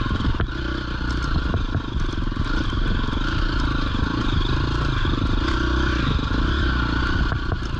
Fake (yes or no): no